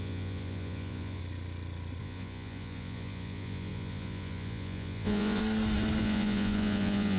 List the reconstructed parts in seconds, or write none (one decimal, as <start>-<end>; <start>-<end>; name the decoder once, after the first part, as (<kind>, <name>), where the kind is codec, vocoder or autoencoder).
0.0-1.2 (vocoder, Vocos); 2.0-5.4; 6.0-7.2